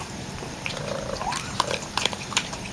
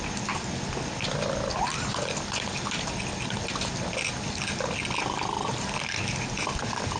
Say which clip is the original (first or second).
second